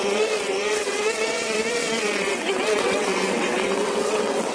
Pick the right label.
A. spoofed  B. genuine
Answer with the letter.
A